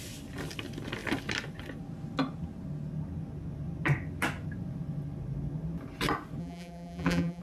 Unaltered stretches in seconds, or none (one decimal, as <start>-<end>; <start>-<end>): 0.0-6.4